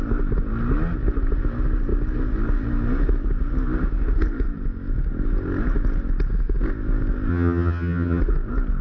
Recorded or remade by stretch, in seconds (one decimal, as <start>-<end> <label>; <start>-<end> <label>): 0.0-7.3 recorded; 7.3-8.2 remade; 8.2-8.8 recorded

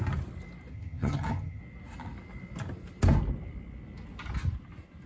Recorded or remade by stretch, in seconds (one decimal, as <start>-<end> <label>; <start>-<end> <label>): 0.0-0.7 recorded; 0.7-1.6 remade; 1.6-5.1 recorded

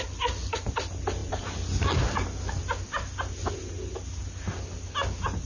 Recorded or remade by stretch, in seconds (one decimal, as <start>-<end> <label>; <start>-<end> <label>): 0.0-5.4 recorded

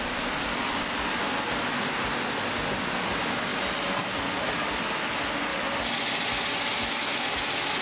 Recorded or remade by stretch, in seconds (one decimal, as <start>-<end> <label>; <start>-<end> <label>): 0.0-7.8 recorded

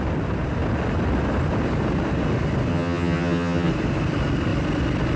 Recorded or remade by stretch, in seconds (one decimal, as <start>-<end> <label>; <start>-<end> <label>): 0.0-2.7 recorded; 2.7-3.7 remade; 3.7-5.2 recorded

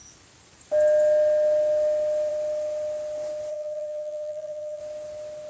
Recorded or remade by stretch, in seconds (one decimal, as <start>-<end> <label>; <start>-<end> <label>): 0.0-3.5 recorded; 3.5-4.8 remade; 4.8-5.5 recorded

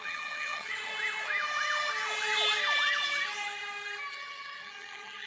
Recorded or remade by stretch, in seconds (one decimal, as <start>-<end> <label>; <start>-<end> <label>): 0.0-0.9 remade; 0.9-4.1 recorded; 4.1-5.3 remade

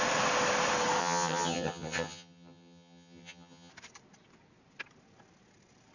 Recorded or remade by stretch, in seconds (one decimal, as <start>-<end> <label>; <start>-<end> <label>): 0.0-1.0 recorded; 1.0-3.7 remade; 3.7-5.9 recorded